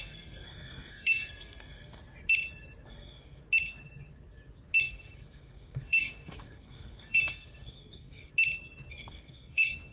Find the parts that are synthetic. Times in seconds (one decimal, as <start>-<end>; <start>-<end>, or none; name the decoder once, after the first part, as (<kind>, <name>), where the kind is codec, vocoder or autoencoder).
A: 0.0-2.0 (codec, SNAC); 2.9-3.4; 4.8-8.3; 8.9-9.9